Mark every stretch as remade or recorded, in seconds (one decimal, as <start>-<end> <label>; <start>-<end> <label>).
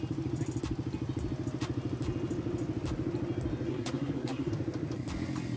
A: 0.0-3.7 recorded; 3.7-4.5 remade; 4.5-5.6 recorded